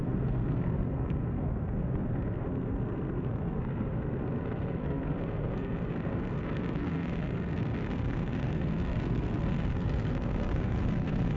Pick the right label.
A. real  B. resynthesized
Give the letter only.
B